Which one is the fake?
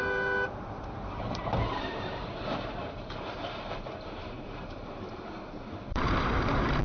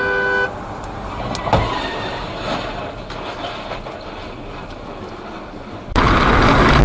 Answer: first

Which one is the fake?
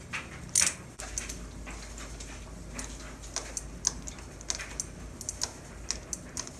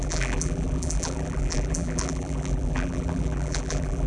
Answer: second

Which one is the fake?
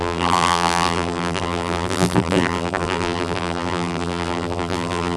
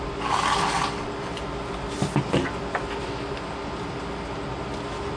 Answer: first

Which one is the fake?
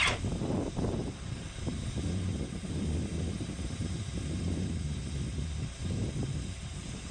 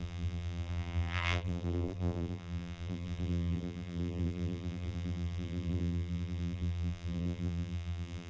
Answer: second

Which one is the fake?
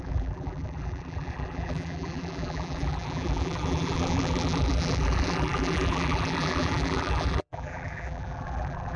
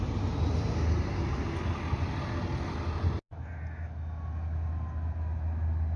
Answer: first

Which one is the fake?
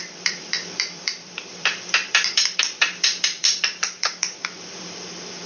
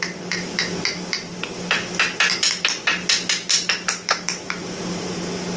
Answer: first